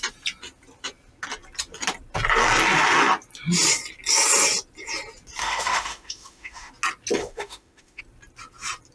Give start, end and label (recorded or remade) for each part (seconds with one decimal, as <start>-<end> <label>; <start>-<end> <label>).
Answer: 0.0-5.4 recorded; 5.4-6.7 remade; 6.7-7.2 recorded; 7.2-8.0 remade; 8.0-8.9 recorded